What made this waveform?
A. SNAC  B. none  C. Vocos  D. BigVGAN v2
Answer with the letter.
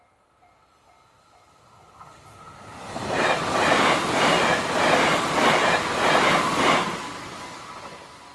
B